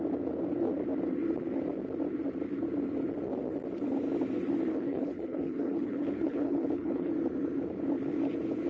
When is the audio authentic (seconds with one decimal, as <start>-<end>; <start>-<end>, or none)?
0.0-4.7; 7.1-8.7

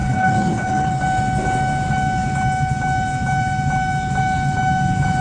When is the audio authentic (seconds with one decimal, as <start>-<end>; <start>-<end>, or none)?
1.0-5.2